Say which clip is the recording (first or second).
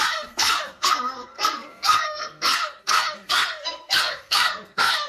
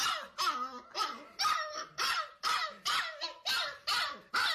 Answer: second